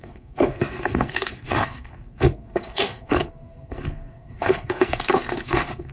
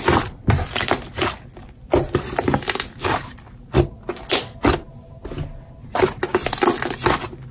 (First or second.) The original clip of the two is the second